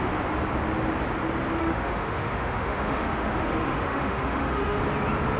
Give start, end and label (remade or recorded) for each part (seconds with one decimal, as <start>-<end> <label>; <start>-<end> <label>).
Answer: 0.0-1.6 recorded; 1.6-4.8 remade; 4.8-5.4 recorded